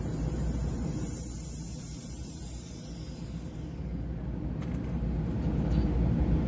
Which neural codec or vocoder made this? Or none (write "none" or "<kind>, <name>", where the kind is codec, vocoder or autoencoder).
none